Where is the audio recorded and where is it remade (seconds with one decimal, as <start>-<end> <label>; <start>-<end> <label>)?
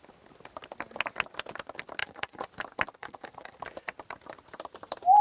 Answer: 0.0-2.0 recorded; 2.0-2.5 remade; 2.5-3.0 recorded; 3.0-3.6 remade; 3.6-5.2 recorded